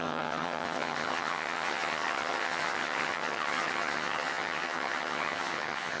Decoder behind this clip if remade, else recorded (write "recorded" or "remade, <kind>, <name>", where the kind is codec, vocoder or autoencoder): remade, vocoder, HiFi-GAN